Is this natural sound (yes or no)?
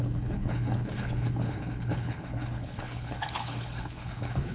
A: no